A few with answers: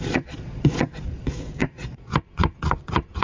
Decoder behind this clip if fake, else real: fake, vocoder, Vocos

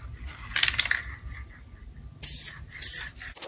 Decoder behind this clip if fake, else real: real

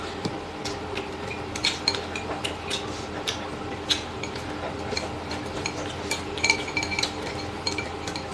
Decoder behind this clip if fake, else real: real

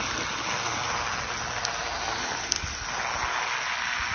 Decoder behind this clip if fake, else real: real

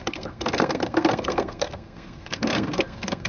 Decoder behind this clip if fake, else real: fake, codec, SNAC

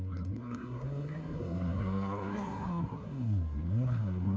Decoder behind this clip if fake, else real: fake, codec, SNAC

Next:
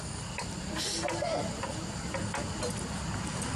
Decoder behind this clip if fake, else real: real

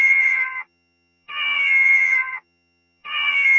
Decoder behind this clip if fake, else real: fake, vocoder, HiFi-GAN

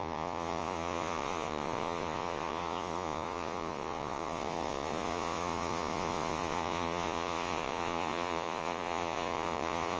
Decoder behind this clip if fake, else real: fake, vocoder, Vocos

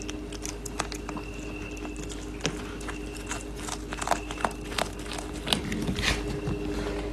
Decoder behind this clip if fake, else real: real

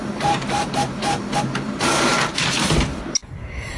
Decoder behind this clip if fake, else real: fake, vocoder, BigVGAN v2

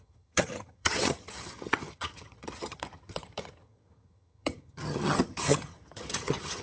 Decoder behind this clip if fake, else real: fake, vocoder, HiFi-GAN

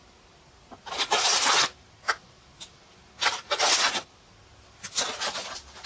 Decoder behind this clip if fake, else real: real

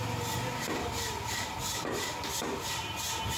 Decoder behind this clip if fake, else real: real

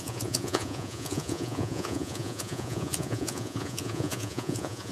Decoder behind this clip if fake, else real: fake, vocoder, Vocos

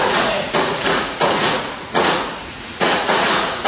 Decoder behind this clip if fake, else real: fake, vocoder, Vocos